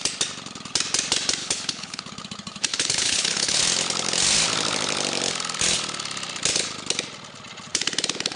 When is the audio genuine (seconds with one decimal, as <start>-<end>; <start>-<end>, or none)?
0.0-1.4; 2.0-2.7; 3.6-8.4